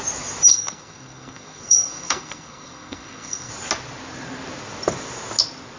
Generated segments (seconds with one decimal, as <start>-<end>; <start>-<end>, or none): 0.5-3.5